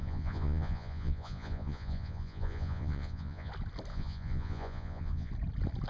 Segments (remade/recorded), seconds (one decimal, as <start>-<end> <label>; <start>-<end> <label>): 0.0-3.5 remade; 3.5-3.9 recorded; 3.9-5.3 remade; 5.3-5.9 recorded